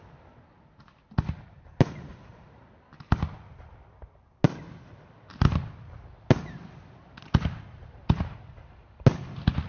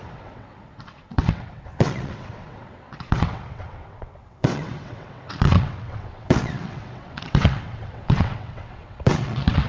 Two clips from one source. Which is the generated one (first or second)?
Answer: second